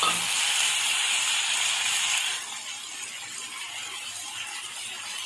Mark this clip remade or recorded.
recorded